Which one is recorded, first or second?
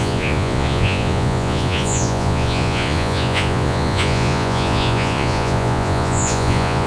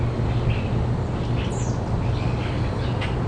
second